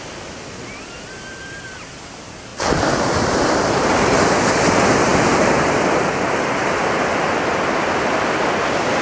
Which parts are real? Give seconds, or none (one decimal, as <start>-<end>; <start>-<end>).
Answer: 0.0-5.1; 8.2-9.0